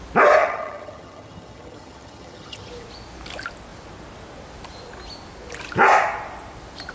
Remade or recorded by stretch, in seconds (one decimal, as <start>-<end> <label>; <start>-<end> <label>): 0.0-0.4 recorded; 0.4-2.7 remade; 2.7-6.9 recorded